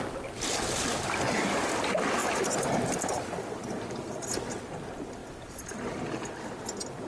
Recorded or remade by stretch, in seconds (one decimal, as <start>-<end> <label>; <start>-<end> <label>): 0.0-2.2 recorded; 2.2-4.2 remade; 4.2-7.1 recorded